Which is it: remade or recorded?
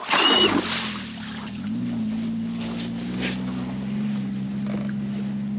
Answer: recorded